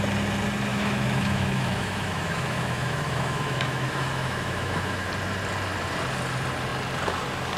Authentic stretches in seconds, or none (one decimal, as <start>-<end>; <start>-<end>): 0.0-0.7; 5.1-7.6